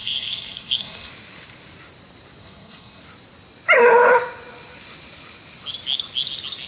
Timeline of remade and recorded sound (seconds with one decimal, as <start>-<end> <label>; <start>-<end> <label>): 0.0-1.1 remade; 1.1-2.4 recorded; 2.4-3.0 remade; 3.0-6.7 recorded

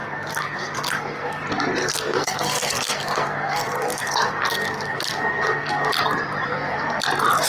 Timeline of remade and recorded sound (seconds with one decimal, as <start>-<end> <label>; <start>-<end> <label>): 0.0-1.4 remade; 1.4-1.8 recorded; 1.8-5.9 remade; 5.9-6.5 recorded; 6.5-7.0 remade; 7.0-7.5 recorded